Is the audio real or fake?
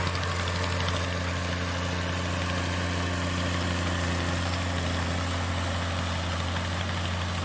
real